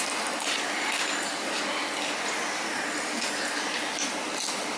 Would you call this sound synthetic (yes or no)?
no